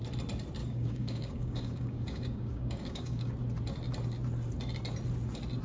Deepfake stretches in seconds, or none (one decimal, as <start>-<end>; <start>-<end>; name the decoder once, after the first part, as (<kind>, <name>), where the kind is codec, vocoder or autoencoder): 0.6-3.3 (codec, DAC)